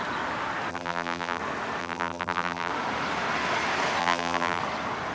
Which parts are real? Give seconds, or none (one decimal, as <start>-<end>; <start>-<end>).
0.0-0.7; 1.4-1.8; 2.7-4.0; 4.6-5.1